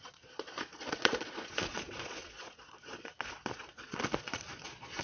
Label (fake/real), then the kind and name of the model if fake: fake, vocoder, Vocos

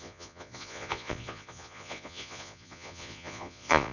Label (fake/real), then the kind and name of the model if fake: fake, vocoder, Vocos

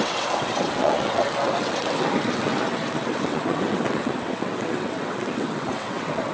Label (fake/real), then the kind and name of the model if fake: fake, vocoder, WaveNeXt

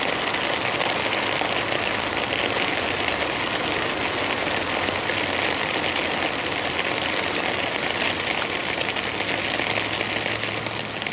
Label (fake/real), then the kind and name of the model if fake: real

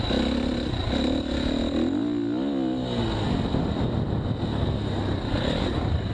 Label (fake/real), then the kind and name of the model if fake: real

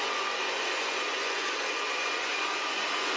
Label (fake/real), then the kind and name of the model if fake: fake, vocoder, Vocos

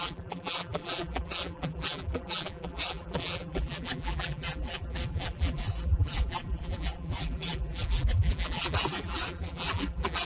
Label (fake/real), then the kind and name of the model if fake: fake, vocoder, BigVGAN v2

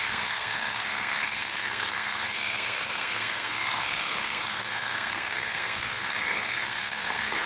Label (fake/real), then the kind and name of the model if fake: fake, codec, SNAC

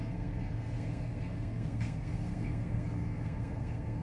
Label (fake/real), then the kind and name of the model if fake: fake, codec, SNAC